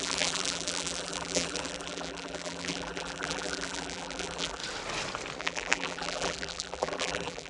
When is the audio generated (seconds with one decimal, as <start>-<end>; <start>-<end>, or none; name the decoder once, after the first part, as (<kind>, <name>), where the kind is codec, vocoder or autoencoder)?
0.0-4.6 (vocoder, BigVGAN v2); 5.4-7.5

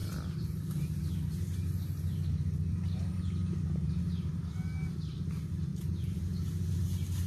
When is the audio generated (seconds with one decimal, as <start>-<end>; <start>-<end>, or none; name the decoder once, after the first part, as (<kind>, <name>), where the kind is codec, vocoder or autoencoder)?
5.7-6.2 (vocoder, BigVGAN v2)

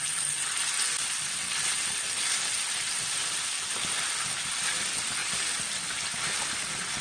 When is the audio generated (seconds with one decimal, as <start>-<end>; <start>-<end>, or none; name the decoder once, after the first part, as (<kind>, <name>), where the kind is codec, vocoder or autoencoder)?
none

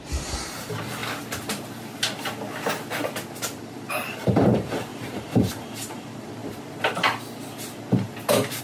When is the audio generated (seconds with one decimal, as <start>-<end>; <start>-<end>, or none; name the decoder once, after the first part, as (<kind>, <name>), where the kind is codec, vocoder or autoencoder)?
0.0-1.0 (vocoder, BigVGAN v2); 3.6-6.4

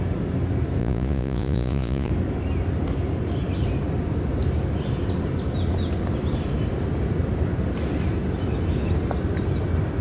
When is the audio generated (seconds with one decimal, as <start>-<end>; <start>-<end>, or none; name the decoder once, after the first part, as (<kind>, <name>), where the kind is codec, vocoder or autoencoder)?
0.8-2.1 (vocoder, Vocos)

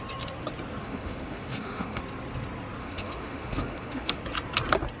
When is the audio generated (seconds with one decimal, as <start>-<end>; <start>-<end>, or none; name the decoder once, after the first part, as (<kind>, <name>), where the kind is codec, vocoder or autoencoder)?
0.8-2.0 (autoencoder, DAC-VAE); 2.8-4.2